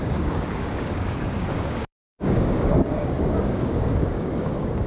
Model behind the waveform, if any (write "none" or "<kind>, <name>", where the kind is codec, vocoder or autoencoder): codec, DAC